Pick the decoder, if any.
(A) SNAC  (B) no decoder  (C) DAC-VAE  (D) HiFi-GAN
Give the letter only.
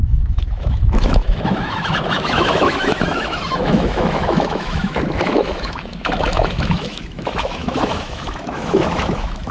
C